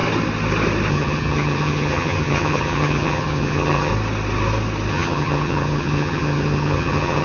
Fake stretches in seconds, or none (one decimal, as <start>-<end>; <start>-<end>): 0.9-3.9; 4.9-7.2